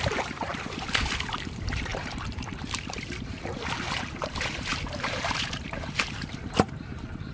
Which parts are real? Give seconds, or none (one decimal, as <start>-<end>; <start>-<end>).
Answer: 0.5-1.4